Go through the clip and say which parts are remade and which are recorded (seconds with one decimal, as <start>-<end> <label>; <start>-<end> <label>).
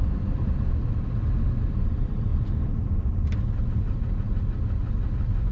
0.0-5.5 recorded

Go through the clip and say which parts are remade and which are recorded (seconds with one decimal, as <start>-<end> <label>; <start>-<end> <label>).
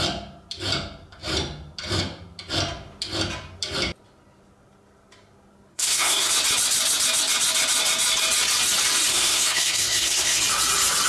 0.0-5.7 recorded; 5.7-6.3 remade; 6.3-9.1 recorded; 9.1-10.4 remade; 10.4-11.1 recorded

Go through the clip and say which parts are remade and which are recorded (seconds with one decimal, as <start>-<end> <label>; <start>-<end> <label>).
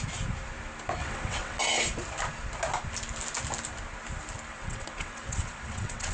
0.0-1.0 recorded; 1.0-1.6 remade; 1.6-4.5 recorded; 4.5-6.1 remade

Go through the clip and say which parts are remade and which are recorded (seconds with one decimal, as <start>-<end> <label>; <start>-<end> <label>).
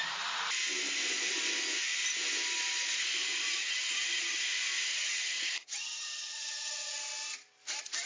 0.0-3.5 recorded; 3.5-4.4 remade; 4.4-4.9 recorded; 4.9-7.0 remade; 7.0-8.1 recorded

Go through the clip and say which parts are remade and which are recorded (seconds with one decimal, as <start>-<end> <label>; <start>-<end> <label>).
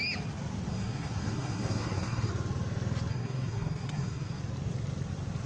0.0-0.7 recorded; 0.7-2.3 remade; 2.3-3.1 recorded; 3.1-4.4 remade; 4.4-5.5 recorded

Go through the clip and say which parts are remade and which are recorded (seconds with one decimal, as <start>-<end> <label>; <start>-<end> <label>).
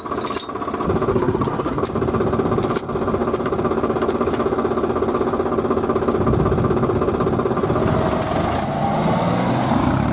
0.0-1.1 recorded; 1.1-1.8 remade; 1.8-10.1 recorded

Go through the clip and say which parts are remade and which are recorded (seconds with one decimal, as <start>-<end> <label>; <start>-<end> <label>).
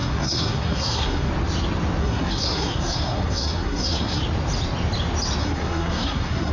0.0-1.3 remade; 1.3-2.0 recorded; 2.0-4.2 remade; 4.2-5.4 recorded; 5.4-6.5 remade